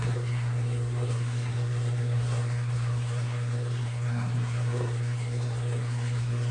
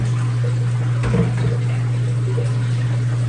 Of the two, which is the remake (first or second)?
first